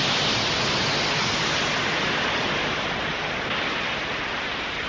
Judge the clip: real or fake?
real